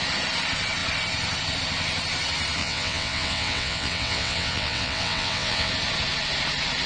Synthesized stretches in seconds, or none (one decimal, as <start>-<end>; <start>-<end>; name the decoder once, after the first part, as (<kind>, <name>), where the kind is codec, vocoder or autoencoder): 2.6-5.7 (vocoder, WaveNeXt)